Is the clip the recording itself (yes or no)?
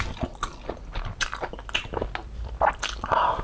yes